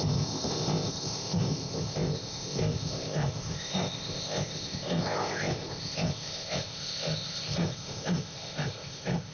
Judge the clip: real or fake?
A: fake